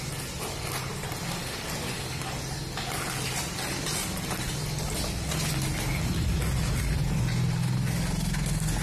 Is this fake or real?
real